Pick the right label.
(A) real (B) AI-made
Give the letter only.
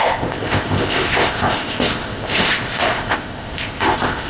B